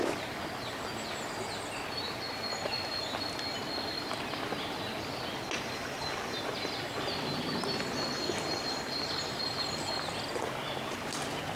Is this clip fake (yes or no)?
no